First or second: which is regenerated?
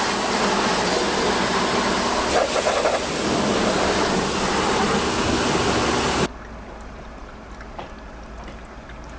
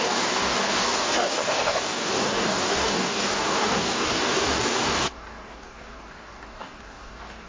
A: second